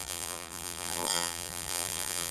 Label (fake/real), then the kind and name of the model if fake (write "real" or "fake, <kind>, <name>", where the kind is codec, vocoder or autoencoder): fake, vocoder, BigVGAN v2